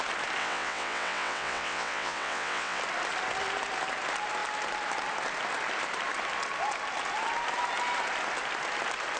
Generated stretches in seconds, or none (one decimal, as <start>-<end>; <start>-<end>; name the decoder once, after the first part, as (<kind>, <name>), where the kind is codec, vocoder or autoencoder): 0.4-2.8 (vocoder, WaveNeXt)